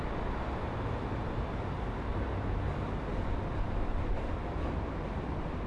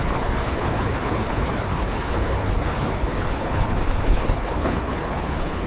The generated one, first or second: second